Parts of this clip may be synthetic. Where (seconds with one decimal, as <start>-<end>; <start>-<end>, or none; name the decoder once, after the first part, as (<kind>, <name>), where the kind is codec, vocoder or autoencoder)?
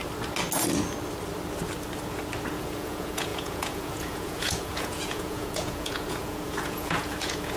2.5-7.6 (vocoder, Vocos)